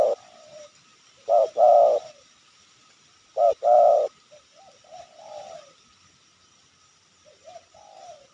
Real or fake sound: real